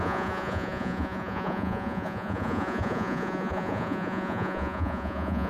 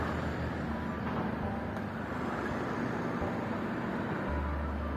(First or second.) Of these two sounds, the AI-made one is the first